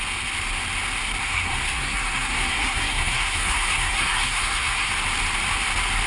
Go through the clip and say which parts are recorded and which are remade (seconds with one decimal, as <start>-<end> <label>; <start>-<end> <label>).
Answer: 0.0-1.2 recorded; 1.2-4.9 remade; 4.9-6.1 recorded